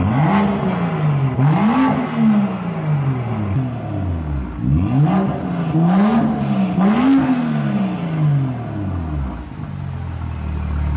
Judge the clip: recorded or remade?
recorded